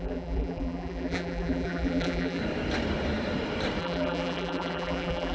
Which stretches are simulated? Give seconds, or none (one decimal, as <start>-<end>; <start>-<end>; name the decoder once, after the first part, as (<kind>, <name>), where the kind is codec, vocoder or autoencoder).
0.0-2.4 (vocoder, BigVGAN v2); 3.8-5.3